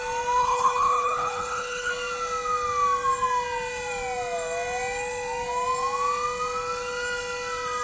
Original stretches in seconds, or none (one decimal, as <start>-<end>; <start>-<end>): 0.0-0.4; 1.9-7.8